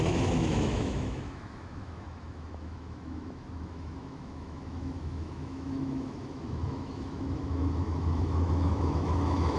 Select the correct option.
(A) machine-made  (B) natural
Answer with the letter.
A